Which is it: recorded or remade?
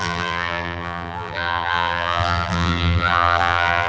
remade